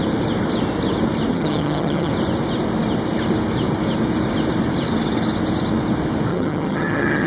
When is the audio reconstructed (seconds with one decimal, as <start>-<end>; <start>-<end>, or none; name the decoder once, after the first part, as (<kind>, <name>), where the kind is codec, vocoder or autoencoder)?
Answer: 1.3-2.1 (vocoder, HiFi-GAN); 6.3-7.3